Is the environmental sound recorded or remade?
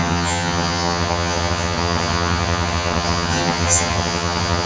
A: remade